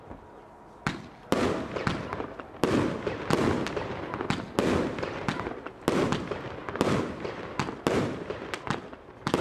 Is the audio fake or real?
real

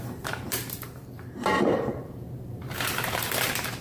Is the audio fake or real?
fake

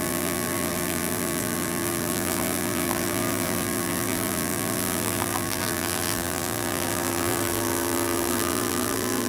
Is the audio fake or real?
fake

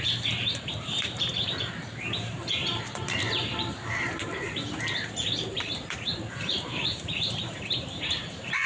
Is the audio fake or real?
fake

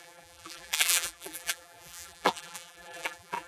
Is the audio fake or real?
fake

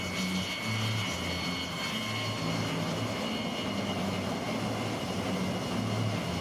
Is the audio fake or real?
real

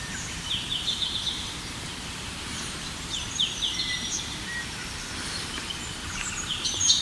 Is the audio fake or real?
fake